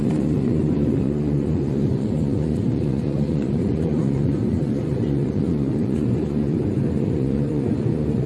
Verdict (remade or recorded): remade